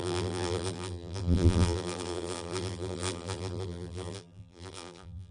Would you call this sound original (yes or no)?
no